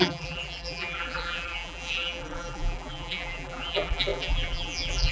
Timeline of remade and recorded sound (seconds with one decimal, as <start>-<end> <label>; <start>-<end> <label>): 0.0-5.1 remade